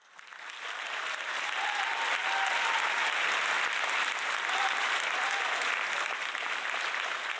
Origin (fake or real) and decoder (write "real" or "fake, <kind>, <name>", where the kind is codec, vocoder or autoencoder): real